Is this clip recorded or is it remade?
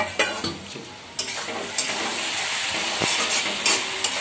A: recorded